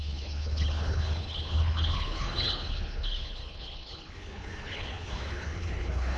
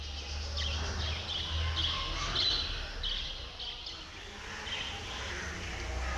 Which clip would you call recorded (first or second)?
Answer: second